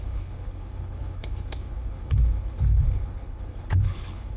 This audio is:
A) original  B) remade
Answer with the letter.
B